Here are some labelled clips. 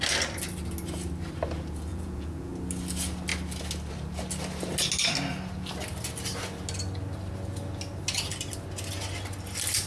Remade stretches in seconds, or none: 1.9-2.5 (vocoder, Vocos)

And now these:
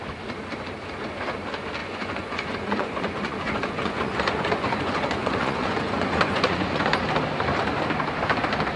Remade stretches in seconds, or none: 1.8-6.8 (vocoder, Vocos)

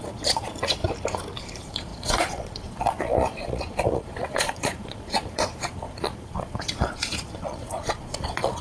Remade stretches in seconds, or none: 0.0-0.8 (vocoder, Vocos); 1.4-8.6